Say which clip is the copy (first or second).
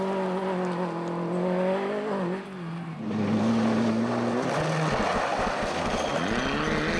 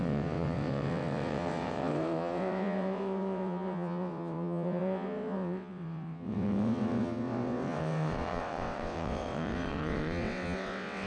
second